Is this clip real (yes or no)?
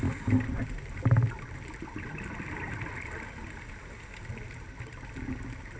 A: yes